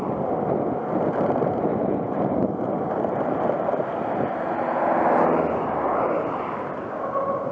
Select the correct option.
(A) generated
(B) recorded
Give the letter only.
B